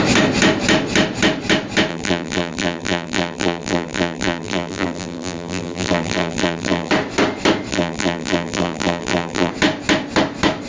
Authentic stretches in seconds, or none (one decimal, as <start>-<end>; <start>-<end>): 0.0-1.9; 6.9-7.7; 9.5-10.7